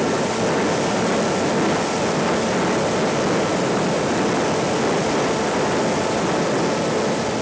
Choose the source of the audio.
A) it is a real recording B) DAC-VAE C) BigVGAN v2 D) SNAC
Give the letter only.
A